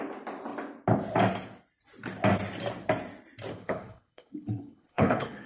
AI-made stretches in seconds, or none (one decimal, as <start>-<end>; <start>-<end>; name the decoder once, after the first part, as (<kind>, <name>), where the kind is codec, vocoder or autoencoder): 3.5-5.5 (codec, HILCodec)